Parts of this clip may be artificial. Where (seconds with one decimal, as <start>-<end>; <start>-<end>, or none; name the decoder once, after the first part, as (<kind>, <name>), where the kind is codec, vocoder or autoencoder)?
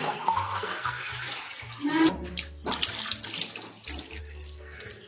0.0-1.1 (codec, SNAC); 4.2-5.1